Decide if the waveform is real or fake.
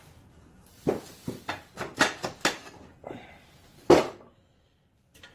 real